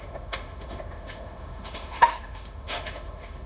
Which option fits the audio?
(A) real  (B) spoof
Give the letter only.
B